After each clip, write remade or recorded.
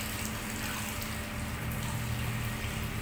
recorded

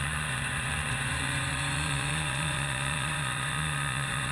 remade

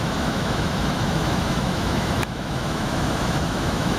remade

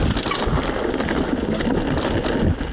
recorded